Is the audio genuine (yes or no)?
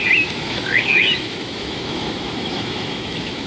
no